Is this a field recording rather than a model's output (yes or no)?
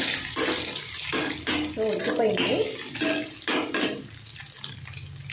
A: yes